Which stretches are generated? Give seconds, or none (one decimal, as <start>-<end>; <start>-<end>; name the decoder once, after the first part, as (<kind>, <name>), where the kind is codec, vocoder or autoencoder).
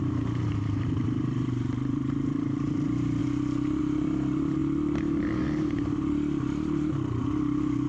0.0-3.2 (vocoder, BigVGAN v2); 3.8-4.6; 5.2-7.9